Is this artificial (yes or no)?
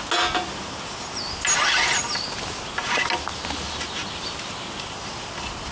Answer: no